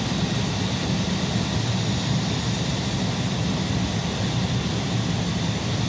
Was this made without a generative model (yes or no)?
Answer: yes